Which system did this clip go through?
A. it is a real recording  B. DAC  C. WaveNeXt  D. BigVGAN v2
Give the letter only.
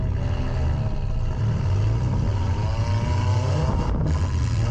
A